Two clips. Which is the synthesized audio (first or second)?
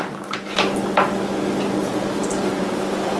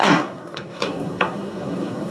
second